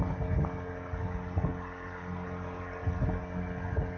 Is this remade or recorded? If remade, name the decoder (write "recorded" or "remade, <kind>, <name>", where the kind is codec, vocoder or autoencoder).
recorded